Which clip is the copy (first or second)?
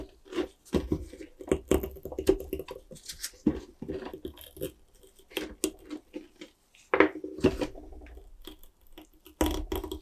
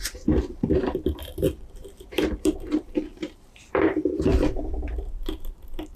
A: second